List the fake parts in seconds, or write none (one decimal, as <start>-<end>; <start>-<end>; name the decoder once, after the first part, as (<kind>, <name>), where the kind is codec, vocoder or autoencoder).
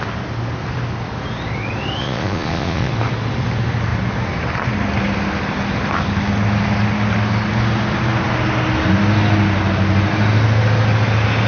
2.0-2.9 (vocoder, Vocos)